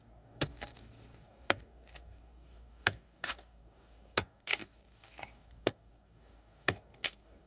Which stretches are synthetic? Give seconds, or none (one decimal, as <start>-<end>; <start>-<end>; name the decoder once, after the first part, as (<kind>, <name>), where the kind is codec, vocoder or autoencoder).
0.0-7.5 (codec, DAC)